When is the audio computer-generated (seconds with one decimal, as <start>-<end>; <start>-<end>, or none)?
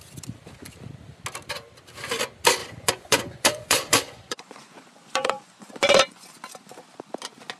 2.6-6.3